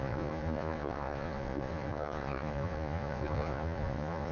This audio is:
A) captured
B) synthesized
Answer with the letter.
B